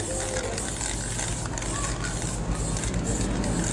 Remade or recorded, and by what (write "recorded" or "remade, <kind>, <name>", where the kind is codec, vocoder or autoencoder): recorded